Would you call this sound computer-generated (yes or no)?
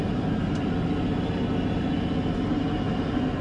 no